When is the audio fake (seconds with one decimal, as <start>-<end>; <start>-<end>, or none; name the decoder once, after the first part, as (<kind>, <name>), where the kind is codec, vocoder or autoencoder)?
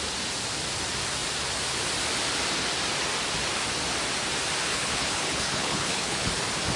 4.7-6.3 (codec, HILCodec)